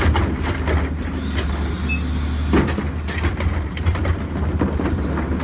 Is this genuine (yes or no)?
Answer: yes